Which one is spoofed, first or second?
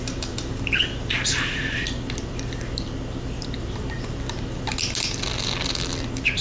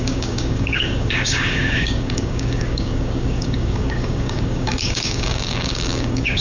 second